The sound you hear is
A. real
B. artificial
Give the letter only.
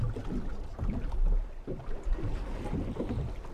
A